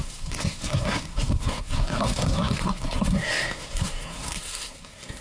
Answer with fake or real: fake